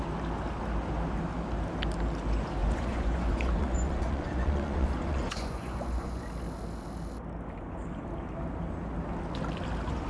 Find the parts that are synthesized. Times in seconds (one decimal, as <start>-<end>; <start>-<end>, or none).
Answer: 2.6-6.2